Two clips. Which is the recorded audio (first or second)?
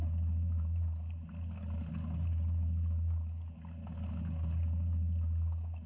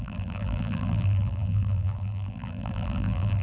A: first